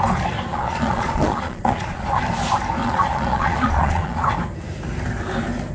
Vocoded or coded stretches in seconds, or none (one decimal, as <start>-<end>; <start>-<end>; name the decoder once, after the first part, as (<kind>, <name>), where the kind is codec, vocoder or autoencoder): 0.5-2.2 (vocoder, Vocos); 2.8-4.3